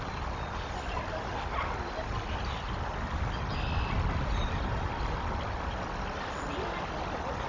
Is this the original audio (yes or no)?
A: yes